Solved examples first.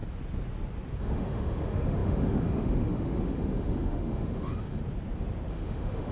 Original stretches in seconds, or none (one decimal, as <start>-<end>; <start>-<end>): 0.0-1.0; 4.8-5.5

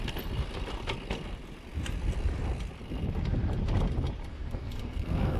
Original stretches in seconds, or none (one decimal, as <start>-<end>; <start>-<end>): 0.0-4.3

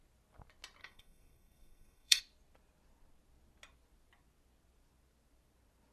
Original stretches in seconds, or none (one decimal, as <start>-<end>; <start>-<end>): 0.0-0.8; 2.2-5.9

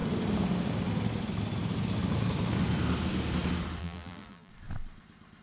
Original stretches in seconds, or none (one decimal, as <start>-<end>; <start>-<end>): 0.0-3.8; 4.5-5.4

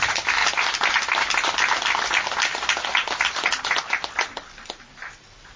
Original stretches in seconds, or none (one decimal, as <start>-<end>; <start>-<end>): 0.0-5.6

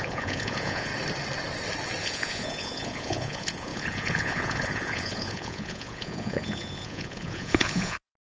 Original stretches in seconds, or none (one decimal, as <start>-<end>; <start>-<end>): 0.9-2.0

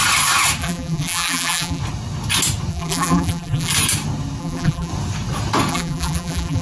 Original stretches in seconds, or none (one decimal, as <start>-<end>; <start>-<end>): 0.0-0.6; 1.8-2.7; 3.7-4.4; 4.9-5.7

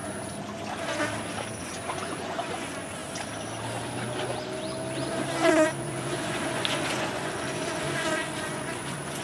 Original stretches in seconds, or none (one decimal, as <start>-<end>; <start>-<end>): 0.0-1.6; 3.0-5.8